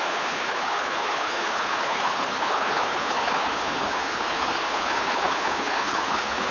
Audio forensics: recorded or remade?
remade